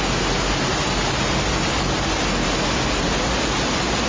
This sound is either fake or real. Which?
real